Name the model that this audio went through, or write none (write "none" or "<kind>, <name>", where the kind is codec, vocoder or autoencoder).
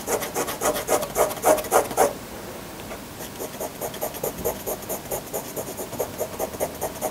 none